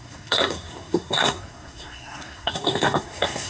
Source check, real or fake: fake